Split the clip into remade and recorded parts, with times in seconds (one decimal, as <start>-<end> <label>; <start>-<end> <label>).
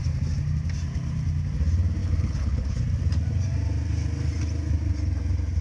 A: 0.0-2.0 recorded; 2.0-2.8 remade; 2.8-5.6 recorded